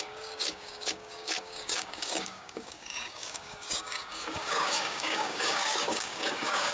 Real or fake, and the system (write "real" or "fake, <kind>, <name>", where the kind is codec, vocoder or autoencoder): fake, codec, DAC